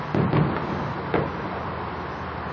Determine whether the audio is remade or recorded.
recorded